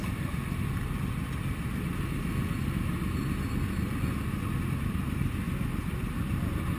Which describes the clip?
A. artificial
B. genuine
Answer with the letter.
B